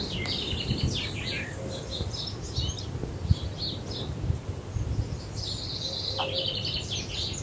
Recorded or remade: recorded